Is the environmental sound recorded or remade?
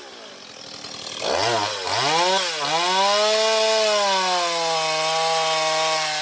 recorded